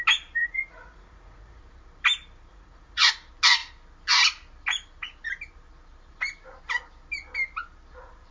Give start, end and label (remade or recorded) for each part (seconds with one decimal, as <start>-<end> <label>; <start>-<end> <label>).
0.0-0.4 recorded; 0.4-1.6 remade; 1.6-2.5 recorded; 2.5-3.1 remade; 3.1-8.3 recorded